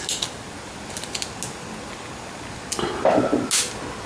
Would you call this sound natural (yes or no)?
yes